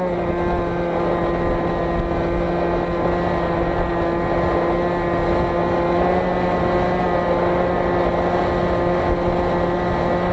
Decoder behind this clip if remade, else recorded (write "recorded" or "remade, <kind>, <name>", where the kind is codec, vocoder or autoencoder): recorded